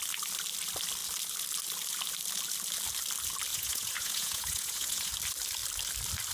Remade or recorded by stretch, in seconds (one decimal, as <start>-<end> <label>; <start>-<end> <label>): 0.0-3.5 recorded; 3.5-5.1 remade; 5.1-6.3 recorded